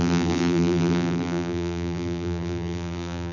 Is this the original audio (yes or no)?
no